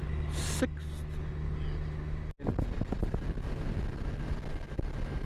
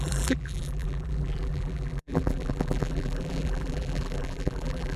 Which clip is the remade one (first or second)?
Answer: second